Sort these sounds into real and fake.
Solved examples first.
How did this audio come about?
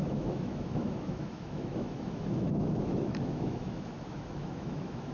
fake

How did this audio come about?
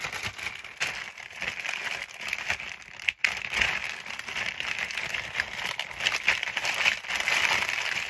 real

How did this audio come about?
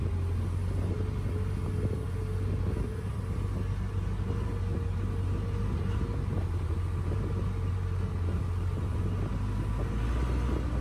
real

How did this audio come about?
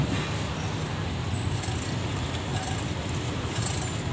real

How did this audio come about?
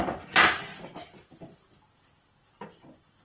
real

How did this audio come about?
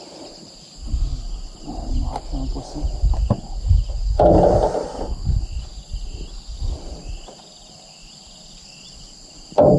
real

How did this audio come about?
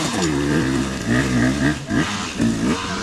real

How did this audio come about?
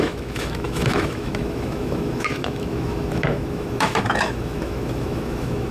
fake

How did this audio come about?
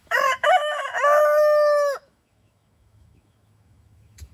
fake